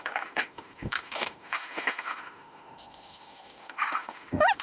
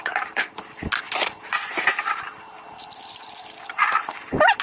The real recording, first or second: second